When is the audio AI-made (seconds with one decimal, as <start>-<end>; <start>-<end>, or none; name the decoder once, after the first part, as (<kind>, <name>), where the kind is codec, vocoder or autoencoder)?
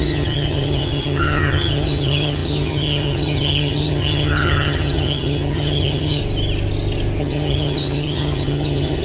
0.0-6.2 (vocoder, HiFi-GAN); 7.2-9.0